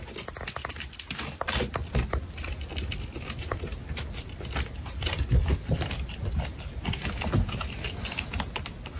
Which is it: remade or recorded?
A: recorded